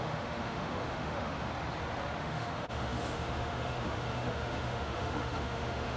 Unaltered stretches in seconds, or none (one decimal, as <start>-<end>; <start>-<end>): 1.5-2.2